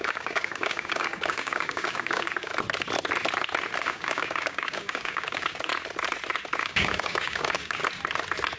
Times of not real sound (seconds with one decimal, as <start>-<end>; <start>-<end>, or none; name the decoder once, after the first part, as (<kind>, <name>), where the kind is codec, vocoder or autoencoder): 0.0-2.5 (codec, DAC); 3.8-5.7; 6.6-7.8